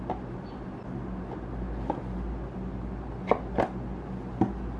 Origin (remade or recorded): recorded